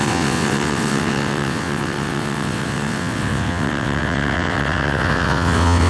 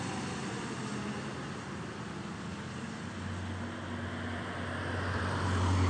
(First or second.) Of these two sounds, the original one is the second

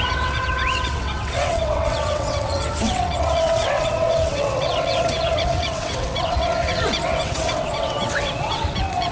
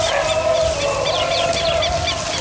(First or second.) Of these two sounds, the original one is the second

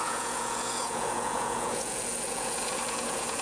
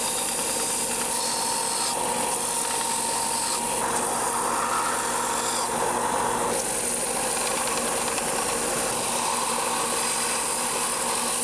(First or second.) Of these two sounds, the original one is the second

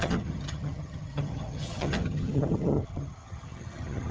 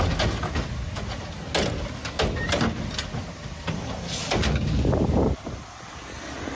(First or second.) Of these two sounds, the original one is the second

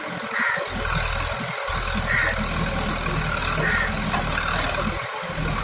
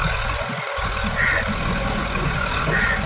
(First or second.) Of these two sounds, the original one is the first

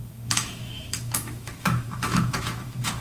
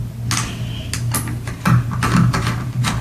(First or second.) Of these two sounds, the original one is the second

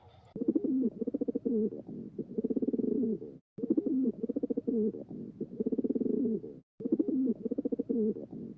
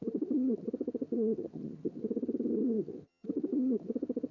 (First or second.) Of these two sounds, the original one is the first